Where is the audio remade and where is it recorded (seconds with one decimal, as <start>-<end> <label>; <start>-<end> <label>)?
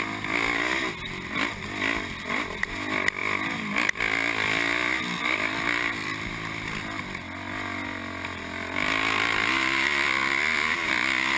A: 0.0-11.4 recorded